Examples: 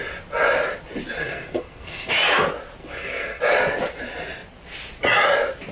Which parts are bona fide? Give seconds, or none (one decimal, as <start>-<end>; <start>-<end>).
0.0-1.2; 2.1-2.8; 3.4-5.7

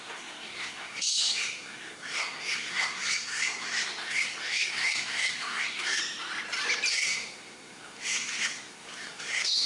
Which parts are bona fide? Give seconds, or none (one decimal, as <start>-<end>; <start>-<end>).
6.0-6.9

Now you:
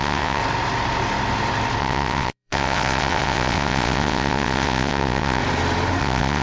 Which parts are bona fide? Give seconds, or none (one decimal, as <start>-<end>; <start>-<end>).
0.4-1.8; 5.4-6.0

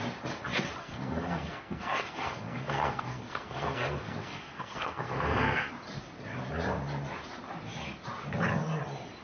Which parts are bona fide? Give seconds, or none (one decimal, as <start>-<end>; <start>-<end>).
0.0-0.8; 5.7-9.2